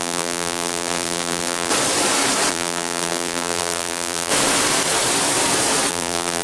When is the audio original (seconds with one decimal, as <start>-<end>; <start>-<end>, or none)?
1.7-2.5; 4.3-5.9

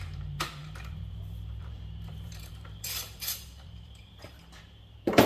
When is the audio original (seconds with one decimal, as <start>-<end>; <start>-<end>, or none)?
none

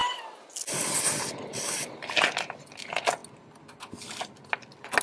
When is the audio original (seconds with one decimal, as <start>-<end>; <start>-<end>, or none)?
0.0-5.0

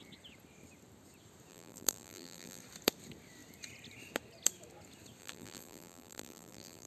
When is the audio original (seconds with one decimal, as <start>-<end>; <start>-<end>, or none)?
0.0-1.5; 2.6-5.2